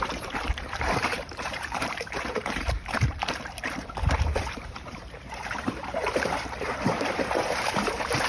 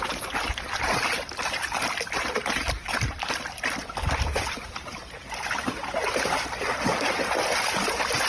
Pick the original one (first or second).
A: second